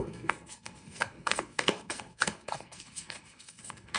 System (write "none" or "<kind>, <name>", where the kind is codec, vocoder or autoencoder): codec, SNAC